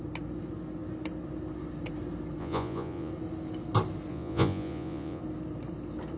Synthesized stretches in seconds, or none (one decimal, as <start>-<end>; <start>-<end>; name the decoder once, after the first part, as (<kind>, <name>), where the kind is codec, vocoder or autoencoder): 2.4-3.1 (vocoder, Vocos); 4.1-5.2